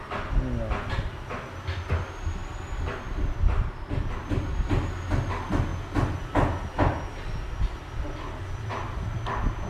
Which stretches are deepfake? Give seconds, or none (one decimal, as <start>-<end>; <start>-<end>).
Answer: none